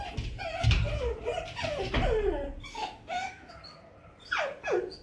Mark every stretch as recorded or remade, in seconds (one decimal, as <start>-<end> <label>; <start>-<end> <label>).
0.0-2.7 recorded; 2.7-3.5 remade; 3.5-5.0 recorded